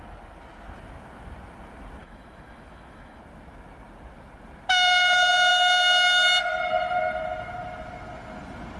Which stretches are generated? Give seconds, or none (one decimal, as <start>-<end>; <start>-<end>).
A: 2.0-3.2